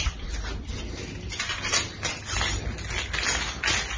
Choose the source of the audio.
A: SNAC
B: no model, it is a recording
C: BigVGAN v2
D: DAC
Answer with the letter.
B